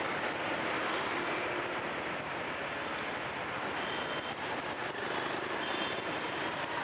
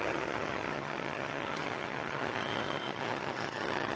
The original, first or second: first